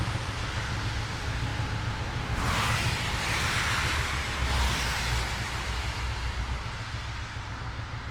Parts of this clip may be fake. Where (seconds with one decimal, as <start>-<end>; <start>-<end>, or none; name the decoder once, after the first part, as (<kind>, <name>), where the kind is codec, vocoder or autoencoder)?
none